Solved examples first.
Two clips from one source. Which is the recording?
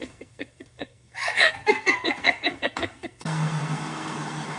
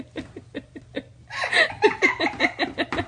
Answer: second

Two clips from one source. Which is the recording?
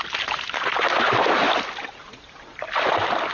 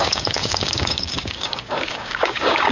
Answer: first